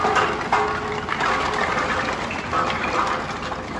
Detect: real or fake real